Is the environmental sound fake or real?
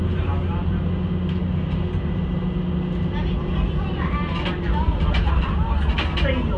real